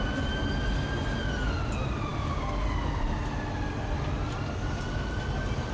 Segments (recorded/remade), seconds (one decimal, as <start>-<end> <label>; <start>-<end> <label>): 0.0-5.7 recorded